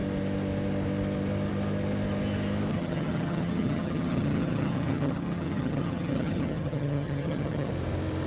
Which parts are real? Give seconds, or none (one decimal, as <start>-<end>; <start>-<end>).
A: 0.0-2.7; 7.7-8.3